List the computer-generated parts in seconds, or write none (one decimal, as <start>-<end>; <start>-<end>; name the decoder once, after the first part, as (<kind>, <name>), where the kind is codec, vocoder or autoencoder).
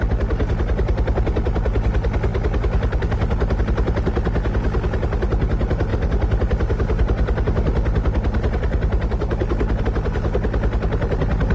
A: none